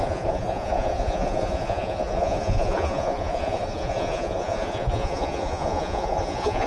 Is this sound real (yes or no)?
no